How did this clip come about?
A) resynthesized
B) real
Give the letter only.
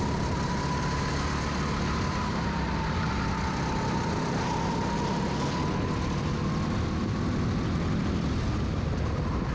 B